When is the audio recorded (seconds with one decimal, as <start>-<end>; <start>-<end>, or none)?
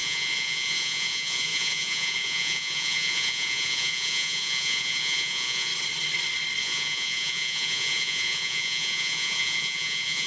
5.7-6.6